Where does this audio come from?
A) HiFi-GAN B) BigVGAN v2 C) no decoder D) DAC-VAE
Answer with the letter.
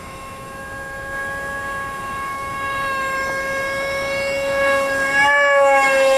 D